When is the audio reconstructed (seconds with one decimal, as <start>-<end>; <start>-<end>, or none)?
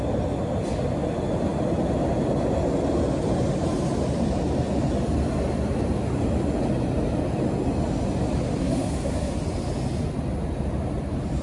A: 8.6-9.3